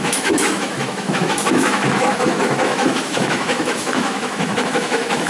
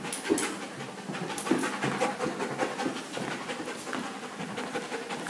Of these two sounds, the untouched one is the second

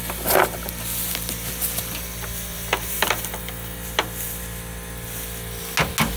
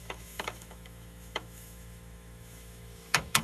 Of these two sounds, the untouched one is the first